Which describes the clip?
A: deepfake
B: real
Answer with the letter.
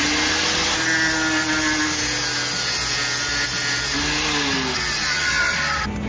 B